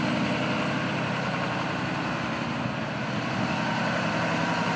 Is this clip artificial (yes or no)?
yes